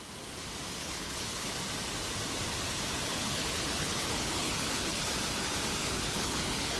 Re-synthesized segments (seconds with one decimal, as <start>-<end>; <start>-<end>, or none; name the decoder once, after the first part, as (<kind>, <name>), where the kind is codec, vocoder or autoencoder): 0.8-1.5 (codec, HILCodec); 3.1-5.1; 5.8-6.8